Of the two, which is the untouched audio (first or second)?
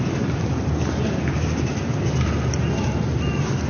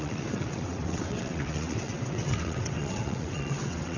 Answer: first